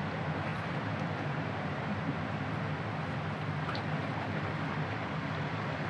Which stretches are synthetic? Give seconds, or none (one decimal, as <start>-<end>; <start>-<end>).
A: 0.5-2.1